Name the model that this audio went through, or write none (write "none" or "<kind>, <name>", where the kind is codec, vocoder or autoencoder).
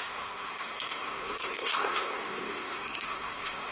codec, SNAC